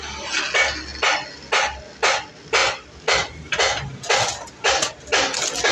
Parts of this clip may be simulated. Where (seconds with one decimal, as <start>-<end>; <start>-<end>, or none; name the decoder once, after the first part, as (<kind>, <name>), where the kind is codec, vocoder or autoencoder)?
none